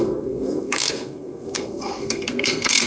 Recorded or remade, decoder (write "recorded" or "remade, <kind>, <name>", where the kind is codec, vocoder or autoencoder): remade, codec, SNAC